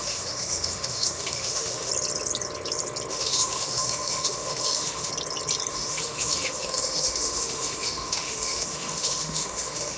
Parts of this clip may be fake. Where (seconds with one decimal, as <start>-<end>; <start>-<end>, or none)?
0.0-1.9; 3.1-5.1; 5.7-10.0